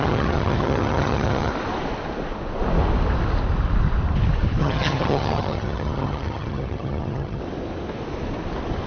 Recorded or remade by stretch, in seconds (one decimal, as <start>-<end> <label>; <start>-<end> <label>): 0.0-1.5 remade; 1.5-4.6 recorded; 4.6-7.4 remade; 7.4-8.9 recorded